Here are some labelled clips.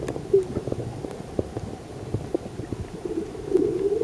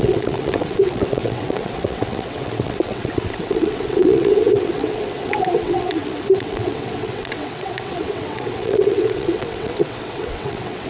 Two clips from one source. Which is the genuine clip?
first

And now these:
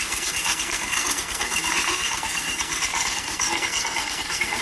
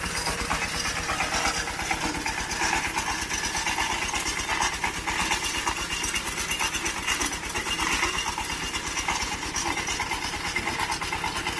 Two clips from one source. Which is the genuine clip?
second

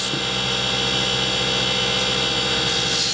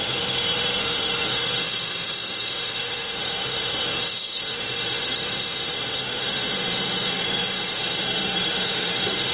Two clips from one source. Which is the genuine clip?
first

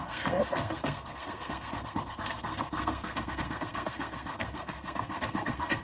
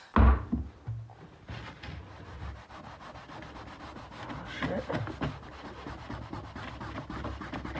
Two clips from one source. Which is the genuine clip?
second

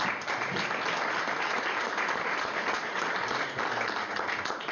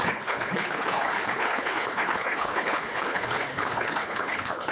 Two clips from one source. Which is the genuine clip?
first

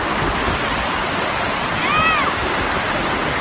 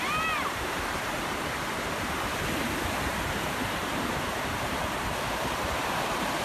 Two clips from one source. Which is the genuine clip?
first